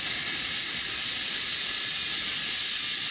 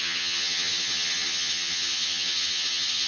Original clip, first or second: first